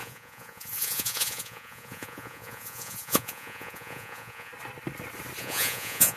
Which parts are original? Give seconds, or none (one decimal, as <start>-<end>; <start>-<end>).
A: 4.5-5.4

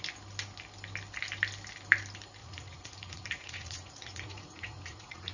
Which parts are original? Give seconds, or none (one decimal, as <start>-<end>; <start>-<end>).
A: 0.0-2.4

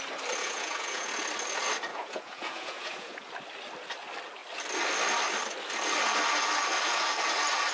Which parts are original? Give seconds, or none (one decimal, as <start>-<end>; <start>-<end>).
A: 0.0-0.4; 1.1-1.9; 3.3-7.7

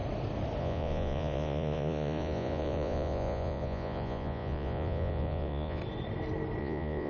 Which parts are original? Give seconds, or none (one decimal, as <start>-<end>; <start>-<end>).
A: 0.0-0.6; 5.8-6.6

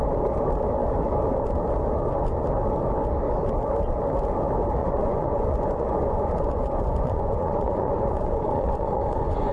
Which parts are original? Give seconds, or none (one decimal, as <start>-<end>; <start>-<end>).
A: 0.0-4.8

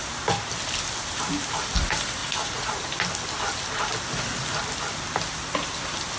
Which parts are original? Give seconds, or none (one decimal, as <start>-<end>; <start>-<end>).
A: 0.0-2.2; 2.7-6.2